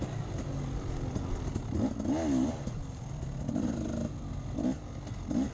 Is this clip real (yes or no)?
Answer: yes